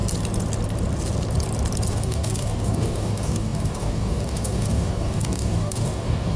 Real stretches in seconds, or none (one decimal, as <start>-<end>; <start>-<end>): 0.0-1.9